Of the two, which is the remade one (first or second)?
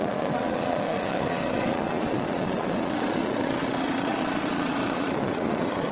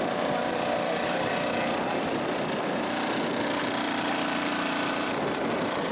first